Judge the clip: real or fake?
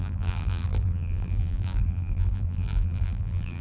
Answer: fake